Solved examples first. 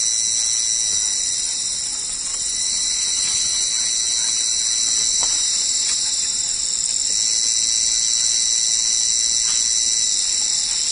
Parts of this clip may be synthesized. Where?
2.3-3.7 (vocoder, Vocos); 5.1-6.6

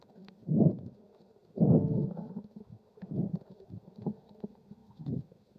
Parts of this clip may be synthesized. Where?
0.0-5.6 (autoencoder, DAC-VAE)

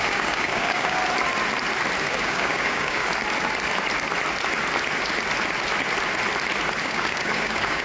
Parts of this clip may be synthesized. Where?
0.0-1.0 (codec, DAC); 2.0-3.0; 6.8-7.8